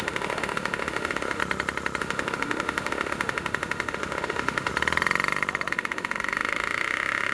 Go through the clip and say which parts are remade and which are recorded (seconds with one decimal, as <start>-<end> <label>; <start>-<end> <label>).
0.0-1.4 remade; 1.4-2.0 recorded; 2.0-4.7 remade; 4.7-5.7 recorded; 5.7-7.3 remade